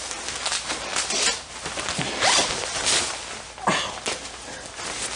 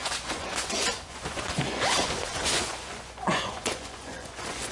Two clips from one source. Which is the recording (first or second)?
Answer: first